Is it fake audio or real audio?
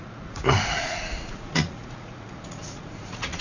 fake